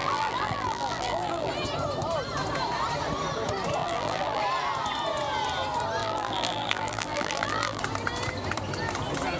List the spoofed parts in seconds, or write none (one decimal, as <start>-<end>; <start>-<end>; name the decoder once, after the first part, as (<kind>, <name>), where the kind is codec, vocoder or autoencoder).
0.0-1.5 (vocoder, BigVGAN v2); 3.8-4.4; 6.0-7.8